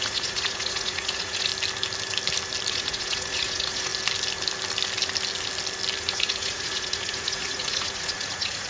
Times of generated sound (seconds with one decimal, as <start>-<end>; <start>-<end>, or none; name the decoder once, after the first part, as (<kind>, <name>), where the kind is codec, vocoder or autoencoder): 0.0-1.5 (vocoder, Vocos); 2.7-3.9; 6.0-8.7